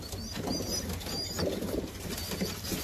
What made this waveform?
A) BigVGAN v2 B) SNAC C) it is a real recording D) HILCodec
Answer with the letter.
C